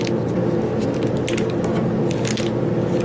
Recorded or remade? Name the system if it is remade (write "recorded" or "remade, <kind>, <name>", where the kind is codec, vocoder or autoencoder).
recorded